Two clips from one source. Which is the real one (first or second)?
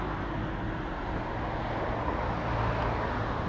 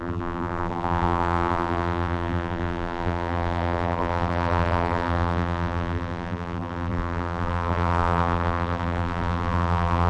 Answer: first